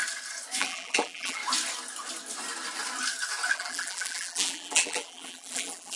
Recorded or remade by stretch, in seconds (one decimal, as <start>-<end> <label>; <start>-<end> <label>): 0.0-0.6 recorded; 0.6-1.4 remade; 1.4-3.5 recorded; 3.5-6.0 remade